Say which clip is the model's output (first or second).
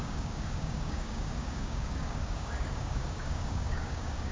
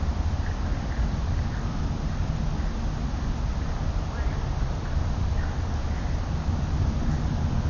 first